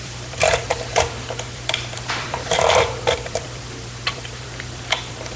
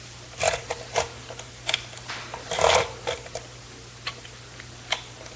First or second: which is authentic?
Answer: second